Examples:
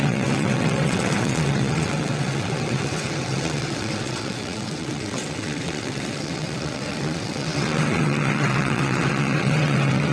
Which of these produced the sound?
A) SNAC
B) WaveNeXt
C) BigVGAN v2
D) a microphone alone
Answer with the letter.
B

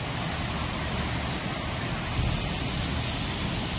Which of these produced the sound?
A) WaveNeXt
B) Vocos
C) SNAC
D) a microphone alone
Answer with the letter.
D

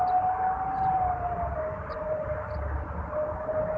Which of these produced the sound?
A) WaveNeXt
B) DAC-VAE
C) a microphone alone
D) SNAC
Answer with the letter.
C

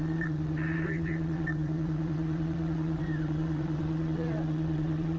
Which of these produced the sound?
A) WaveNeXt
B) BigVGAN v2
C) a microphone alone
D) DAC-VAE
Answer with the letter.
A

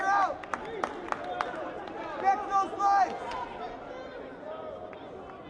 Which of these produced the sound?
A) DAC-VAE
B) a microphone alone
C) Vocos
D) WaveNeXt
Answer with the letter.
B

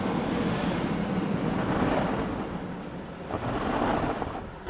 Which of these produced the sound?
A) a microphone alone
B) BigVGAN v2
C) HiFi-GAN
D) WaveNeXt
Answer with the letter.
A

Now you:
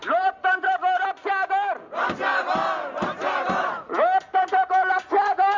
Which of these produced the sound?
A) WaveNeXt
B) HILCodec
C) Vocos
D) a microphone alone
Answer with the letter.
D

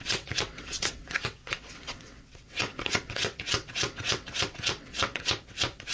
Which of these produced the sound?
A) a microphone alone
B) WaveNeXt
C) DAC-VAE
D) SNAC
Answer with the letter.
B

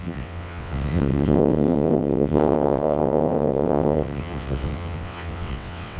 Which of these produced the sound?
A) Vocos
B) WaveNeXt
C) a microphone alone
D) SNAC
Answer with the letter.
B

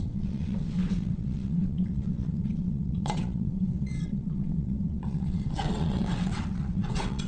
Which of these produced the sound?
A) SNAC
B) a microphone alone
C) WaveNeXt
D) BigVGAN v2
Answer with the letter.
C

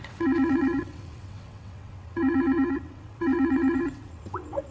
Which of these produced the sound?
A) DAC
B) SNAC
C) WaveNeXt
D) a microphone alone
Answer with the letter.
C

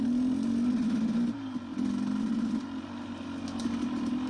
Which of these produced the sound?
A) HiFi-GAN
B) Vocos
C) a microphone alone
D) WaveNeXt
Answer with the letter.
C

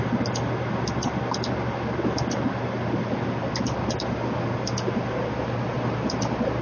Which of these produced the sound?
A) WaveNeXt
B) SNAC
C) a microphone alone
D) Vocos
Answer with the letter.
C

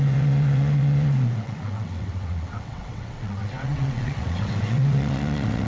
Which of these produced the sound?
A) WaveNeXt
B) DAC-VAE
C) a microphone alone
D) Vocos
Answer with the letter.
A